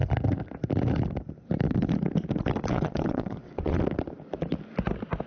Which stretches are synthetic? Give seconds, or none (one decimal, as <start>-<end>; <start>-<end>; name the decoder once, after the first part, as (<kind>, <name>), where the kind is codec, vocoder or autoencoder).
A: 2.7-3.8 (vocoder, WaveNeXt)